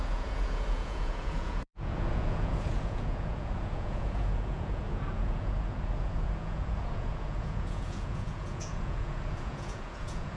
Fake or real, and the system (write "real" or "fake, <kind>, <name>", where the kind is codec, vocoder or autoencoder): fake, vocoder, Vocos